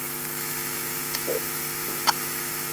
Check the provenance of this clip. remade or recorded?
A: remade